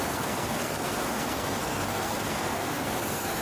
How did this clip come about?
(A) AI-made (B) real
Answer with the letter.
A